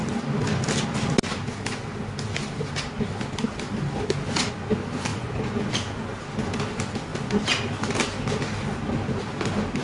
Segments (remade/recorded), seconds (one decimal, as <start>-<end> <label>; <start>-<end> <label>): 0.0-5.1 recorded; 5.1-5.7 remade; 5.7-9.8 recorded